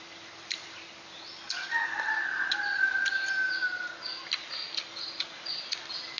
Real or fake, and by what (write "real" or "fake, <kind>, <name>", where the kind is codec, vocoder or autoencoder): real